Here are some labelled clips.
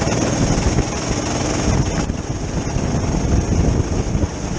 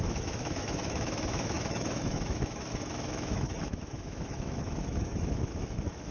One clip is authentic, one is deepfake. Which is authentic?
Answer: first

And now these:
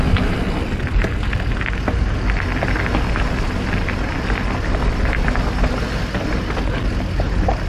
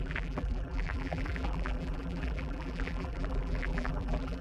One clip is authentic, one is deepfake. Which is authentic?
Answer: first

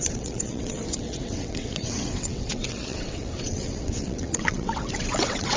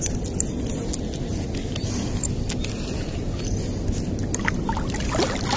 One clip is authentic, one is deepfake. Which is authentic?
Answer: second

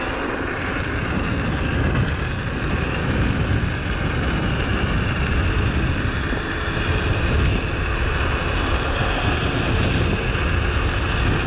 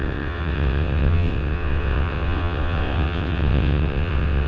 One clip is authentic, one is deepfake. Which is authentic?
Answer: first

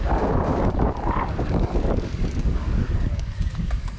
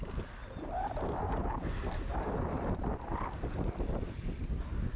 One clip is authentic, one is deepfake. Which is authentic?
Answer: second